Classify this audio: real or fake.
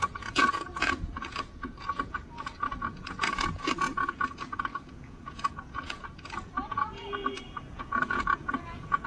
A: fake